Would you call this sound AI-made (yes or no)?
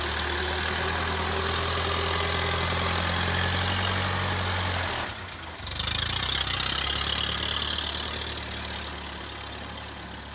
no